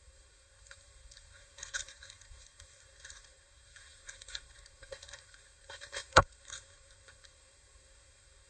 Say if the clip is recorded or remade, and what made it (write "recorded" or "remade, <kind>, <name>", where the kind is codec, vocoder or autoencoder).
remade, codec, SNAC